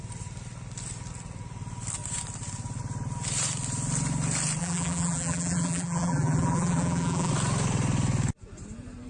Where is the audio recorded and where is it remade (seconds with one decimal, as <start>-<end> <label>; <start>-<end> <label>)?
0.0-4.6 recorded; 4.6-7.3 remade; 7.3-9.1 recorded

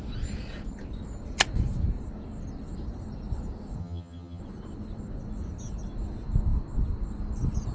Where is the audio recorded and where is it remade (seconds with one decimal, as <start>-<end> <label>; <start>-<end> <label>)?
0.0-3.8 recorded; 3.8-4.4 remade; 4.4-7.7 recorded

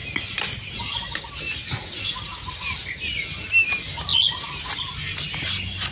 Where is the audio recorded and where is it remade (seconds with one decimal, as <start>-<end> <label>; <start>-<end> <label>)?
0.0-5.9 recorded

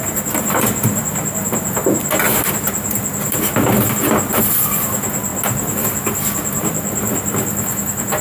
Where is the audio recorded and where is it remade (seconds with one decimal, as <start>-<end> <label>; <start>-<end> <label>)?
0.0-8.2 recorded

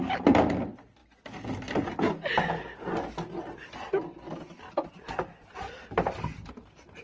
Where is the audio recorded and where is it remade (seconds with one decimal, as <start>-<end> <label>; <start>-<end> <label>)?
0.0-7.0 recorded

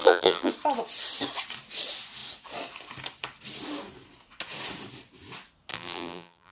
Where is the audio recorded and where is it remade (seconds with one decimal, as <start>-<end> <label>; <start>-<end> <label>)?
0.0-0.5 remade; 0.5-5.7 recorded; 5.7-6.5 remade

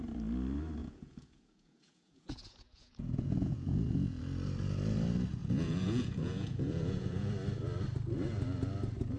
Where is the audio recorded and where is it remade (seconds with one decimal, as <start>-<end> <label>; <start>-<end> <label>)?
0.0-0.8 recorded; 0.8-4.2 remade; 4.2-5.4 recorded; 5.4-7.3 remade; 7.3-9.2 recorded